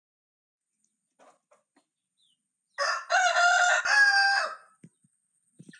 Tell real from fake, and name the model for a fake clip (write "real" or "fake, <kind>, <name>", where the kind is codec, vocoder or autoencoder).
real